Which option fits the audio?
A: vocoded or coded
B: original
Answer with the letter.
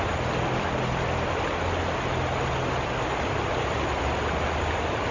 B